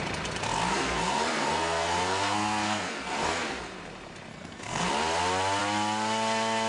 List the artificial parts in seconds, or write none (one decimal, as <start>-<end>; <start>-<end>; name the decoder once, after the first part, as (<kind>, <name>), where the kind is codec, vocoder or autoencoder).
0.7-3.6 (codec, SNAC); 4.3-4.9